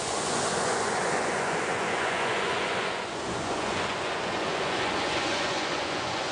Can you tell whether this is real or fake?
fake